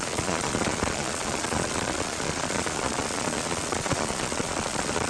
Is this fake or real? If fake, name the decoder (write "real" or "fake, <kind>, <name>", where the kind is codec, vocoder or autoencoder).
fake, vocoder, Vocos